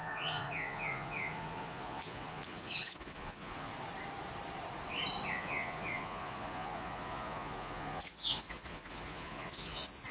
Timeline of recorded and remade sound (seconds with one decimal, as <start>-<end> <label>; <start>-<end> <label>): 0.0-3.7 remade; 3.7-5.3 recorded; 5.3-10.1 remade